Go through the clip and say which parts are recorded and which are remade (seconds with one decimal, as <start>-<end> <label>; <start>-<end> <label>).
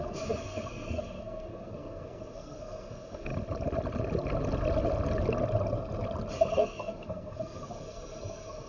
0.0-3.3 remade; 3.3-6.5 recorded; 6.5-8.7 remade